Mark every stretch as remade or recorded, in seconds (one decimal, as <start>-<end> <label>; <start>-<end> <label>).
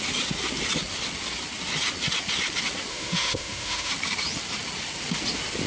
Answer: 0.0-2.9 recorded; 2.9-3.9 remade; 3.9-5.7 recorded